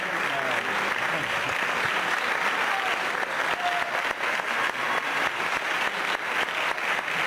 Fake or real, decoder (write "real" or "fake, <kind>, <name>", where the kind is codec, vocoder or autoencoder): real